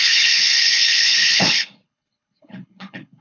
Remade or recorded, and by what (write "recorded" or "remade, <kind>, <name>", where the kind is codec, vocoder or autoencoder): remade, codec, HILCodec